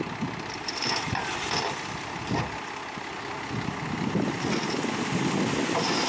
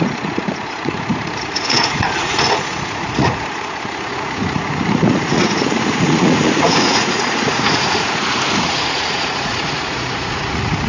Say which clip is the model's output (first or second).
second